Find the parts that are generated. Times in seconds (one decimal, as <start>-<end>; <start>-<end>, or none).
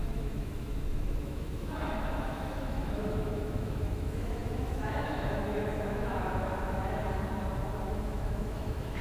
0.0-7.0; 7.9-9.0